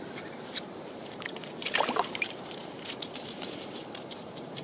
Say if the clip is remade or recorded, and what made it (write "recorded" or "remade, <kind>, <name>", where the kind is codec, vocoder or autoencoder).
remade, vocoder, BigVGAN v2